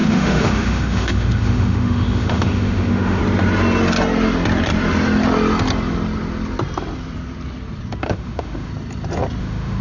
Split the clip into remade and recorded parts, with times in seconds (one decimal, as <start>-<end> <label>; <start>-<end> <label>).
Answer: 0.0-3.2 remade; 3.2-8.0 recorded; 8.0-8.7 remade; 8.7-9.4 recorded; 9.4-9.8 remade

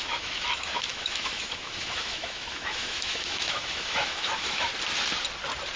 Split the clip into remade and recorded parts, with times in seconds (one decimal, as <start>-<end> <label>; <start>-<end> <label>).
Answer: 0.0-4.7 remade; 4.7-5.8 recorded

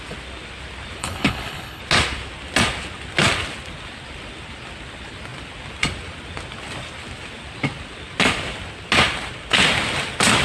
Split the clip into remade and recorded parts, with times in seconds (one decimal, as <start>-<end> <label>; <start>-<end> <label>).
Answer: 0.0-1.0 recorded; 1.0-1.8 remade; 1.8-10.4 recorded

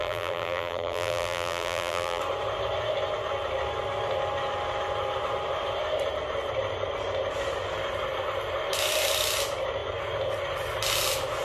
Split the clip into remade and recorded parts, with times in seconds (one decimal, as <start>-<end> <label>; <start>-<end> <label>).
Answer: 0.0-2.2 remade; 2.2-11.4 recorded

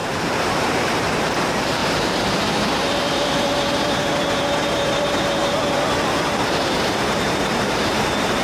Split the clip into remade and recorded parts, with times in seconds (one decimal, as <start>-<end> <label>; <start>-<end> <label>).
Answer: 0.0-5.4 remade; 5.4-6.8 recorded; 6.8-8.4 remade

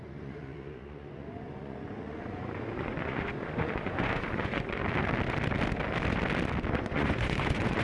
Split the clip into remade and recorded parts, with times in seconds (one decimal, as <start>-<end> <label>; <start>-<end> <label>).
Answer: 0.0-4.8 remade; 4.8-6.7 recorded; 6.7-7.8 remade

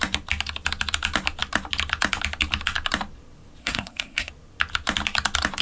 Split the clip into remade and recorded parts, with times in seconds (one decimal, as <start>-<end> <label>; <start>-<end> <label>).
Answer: 0.0-3.6 recorded; 3.6-4.3 remade; 4.3-5.6 recorded